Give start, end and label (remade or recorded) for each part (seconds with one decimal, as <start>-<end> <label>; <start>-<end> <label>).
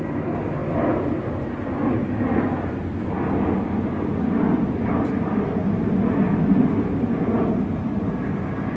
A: 0.0-8.8 recorded